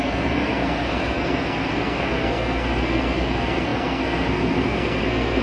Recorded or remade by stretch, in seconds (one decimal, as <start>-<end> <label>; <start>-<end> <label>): 0.0-5.4 remade